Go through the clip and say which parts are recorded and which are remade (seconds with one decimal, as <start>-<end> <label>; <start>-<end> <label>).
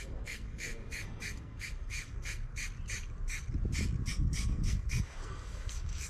0.0-2.5 remade; 2.5-4.1 recorded; 4.1-6.1 remade